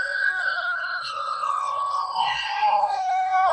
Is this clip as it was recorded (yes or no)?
no